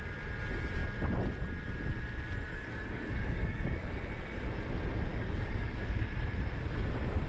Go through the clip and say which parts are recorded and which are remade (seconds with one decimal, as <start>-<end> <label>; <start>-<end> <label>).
0.0-2.5 recorded; 2.5-3.9 remade; 3.9-5.1 recorded; 5.1-5.8 remade; 5.8-7.3 recorded